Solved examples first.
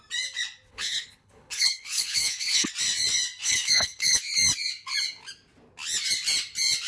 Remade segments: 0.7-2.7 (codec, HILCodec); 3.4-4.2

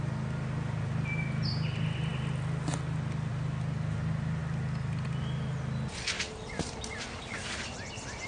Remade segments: none

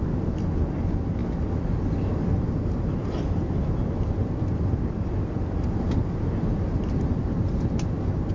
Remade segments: none

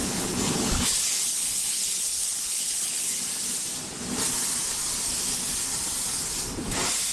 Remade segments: 0.0-3.1 (codec, HILCodec)

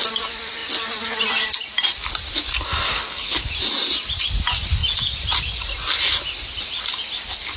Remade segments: 2.9-3.5 (codec, HILCodec)

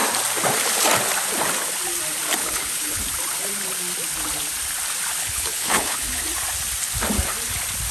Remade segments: 2.4-3.0 (codec, HILCodec); 5.2-6.2